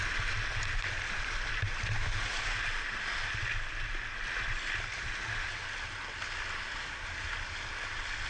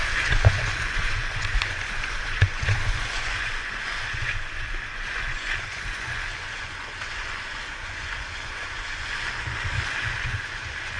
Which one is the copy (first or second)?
second